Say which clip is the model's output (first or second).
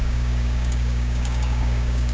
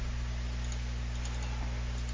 first